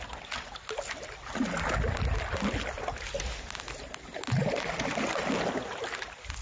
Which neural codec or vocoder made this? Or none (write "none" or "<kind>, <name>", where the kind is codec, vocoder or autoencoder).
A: none